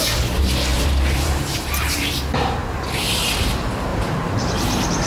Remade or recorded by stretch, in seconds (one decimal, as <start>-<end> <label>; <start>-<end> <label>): 0.0-0.7 recorded; 0.7-1.4 remade; 1.4-3.9 recorded; 3.9-5.1 remade

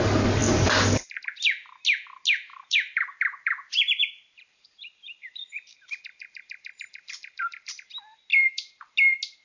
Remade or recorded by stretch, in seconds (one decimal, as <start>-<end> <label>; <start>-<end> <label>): 0.0-0.4 recorded; 0.4-1.2 remade; 1.2-2.5 recorded; 2.5-7.7 remade; 7.7-8.3 recorded; 8.3-8.9 remade; 8.9-9.4 recorded